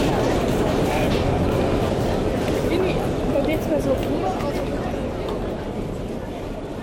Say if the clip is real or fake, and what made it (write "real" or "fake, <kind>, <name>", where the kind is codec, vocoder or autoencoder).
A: fake, vocoder, BigVGAN v2